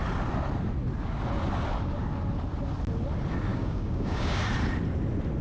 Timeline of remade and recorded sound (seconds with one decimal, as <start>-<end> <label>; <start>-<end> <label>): 0.0-3.5 recorded; 3.5-4.4 remade; 4.4-5.4 recorded